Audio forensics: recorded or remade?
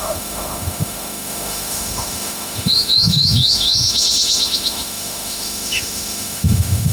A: remade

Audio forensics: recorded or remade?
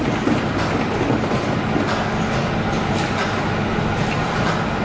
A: recorded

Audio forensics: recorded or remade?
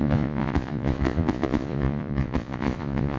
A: remade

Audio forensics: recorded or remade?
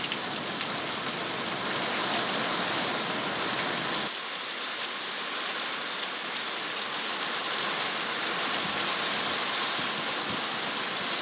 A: recorded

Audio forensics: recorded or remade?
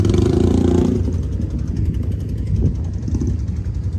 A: recorded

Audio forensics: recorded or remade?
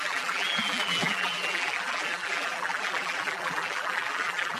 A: remade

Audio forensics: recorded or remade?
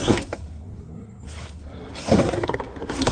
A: remade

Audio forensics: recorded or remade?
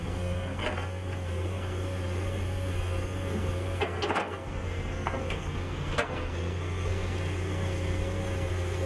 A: remade